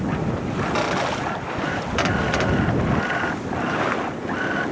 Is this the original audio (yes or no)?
yes